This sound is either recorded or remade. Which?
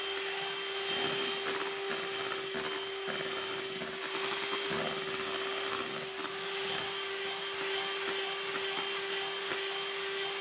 recorded